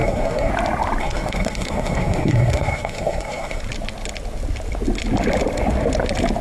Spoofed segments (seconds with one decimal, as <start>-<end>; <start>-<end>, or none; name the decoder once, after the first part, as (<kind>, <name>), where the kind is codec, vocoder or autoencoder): 0.0-0.5 (codec, SNAC); 1.0-3.6